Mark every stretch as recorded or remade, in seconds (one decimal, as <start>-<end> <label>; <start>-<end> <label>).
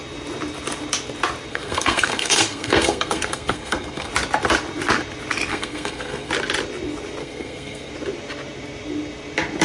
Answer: 0.0-1.5 recorded; 1.5-4.1 remade; 4.1-5.5 recorded; 5.5-6.3 remade; 6.3-7.2 recorded; 7.2-7.9 remade; 7.9-9.6 recorded